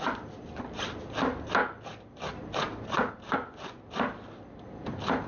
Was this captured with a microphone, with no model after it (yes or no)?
yes